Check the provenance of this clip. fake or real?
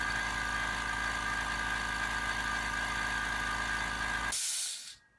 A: real